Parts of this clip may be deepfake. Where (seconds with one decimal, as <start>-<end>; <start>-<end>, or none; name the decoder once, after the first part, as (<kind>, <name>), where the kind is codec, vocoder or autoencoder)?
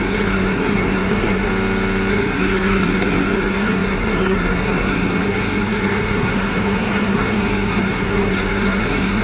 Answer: 0.0-1.5 (codec, SNAC); 2.1-9.2